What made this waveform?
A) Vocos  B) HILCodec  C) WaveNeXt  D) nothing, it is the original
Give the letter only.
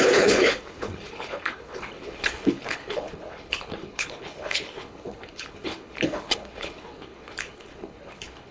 B